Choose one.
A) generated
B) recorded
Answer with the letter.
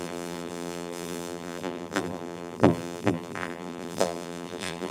A